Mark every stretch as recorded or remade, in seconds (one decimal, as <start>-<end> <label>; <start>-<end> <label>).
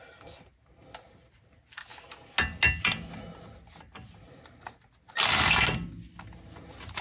0.0-7.0 recorded